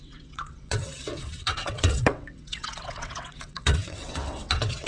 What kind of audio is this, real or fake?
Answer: fake